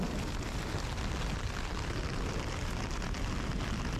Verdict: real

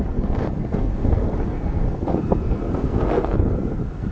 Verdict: fake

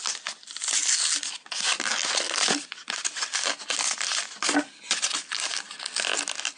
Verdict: real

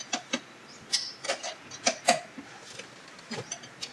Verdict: real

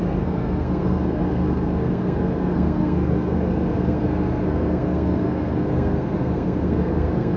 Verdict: fake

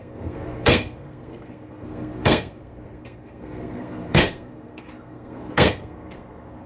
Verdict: fake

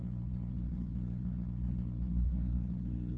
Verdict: fake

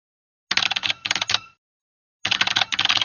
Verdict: real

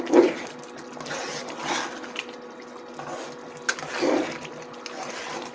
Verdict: real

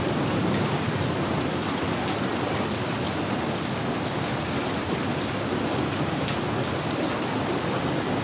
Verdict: real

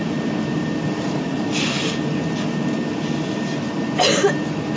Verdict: real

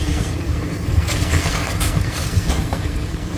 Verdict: fake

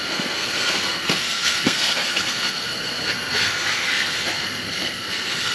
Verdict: fake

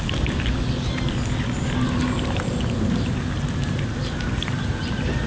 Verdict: real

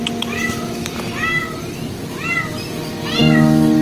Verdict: real